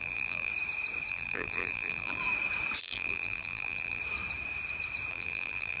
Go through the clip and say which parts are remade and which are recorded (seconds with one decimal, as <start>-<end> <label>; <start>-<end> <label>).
0.0-0.5 remade; 0.5-1.1 recorded; 1.1-2.2 remade; 2.2-2.8 recorded; 2.8-4.0 remade; 4.0-5.1 recorded; 5.1-5.8 remade